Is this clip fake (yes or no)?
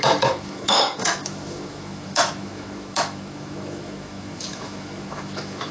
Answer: yes